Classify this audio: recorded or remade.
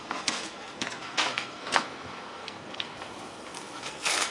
remade